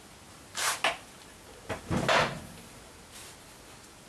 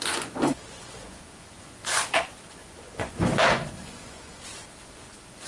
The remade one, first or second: second